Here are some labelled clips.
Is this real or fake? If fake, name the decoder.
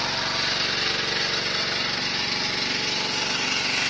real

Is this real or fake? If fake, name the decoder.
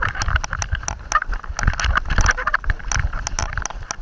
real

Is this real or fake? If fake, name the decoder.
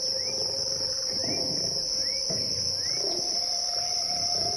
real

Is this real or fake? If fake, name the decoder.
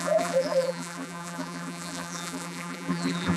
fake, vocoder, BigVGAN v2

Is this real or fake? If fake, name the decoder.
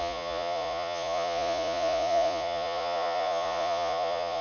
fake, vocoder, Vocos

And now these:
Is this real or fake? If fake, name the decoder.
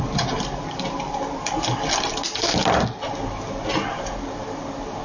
real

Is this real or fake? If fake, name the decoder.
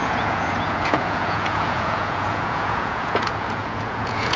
fake, vocoder, Vocos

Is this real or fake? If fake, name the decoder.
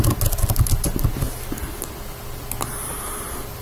real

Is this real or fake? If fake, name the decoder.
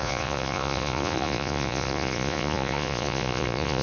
fake, vocoder, Vocos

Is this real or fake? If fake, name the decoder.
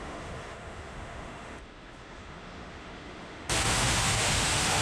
fake, autoencoder, DAC-VAE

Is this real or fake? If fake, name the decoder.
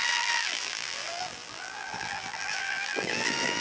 fake, vocoder, BigVGAN v2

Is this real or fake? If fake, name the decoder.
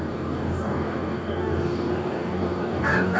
fake, codec, DAC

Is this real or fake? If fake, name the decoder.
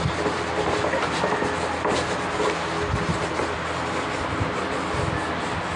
real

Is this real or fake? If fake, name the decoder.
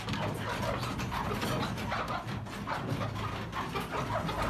real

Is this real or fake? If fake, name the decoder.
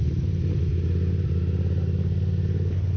real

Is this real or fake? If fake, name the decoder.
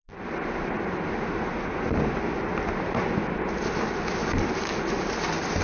real